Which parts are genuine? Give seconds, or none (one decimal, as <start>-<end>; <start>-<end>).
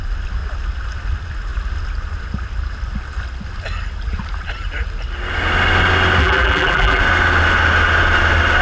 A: 0.0-6.2; 7.0-8.6